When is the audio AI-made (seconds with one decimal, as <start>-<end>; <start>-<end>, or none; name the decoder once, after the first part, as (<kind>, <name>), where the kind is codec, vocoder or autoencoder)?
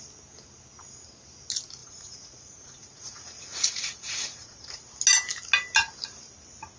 1.8-4.8 (vocoder, Vocos)